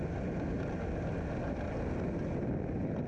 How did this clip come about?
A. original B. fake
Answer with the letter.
A